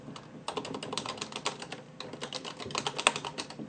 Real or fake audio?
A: real